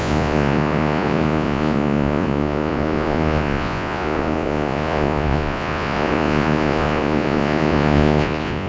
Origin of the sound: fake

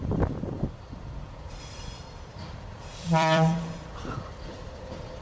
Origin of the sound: fake